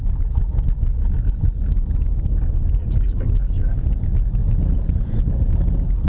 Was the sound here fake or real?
real